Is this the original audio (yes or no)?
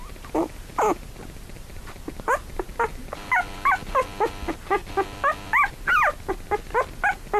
yes